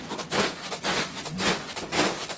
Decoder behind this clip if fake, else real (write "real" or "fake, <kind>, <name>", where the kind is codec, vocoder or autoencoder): fake, vocoder, Vocos